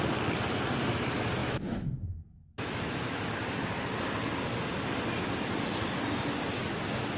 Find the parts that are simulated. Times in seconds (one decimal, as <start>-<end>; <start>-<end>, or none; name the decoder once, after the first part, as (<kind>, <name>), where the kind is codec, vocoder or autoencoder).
1.4-3.3 (autoencoder, DAC-VAE)